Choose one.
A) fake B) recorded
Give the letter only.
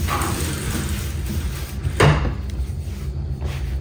B